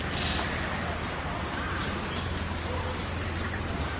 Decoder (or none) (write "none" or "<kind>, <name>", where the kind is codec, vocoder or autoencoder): none